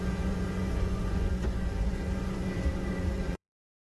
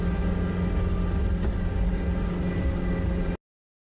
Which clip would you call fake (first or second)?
first